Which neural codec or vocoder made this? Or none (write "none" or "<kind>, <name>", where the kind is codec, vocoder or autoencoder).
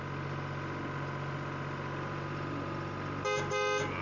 none